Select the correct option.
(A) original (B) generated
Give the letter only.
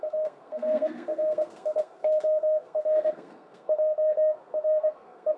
B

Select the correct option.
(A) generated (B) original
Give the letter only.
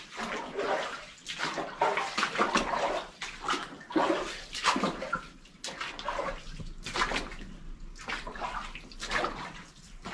B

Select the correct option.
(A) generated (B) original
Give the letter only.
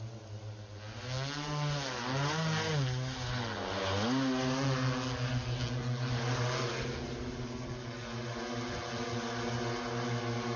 B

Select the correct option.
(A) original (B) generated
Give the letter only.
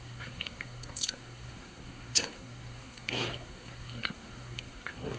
B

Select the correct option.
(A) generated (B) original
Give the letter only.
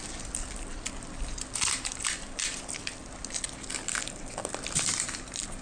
B